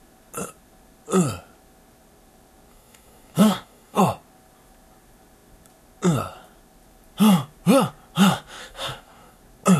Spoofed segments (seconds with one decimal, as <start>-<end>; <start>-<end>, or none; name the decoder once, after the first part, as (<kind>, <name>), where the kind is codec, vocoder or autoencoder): 2.7-4.0 (codec, DAC); 8.6-9.4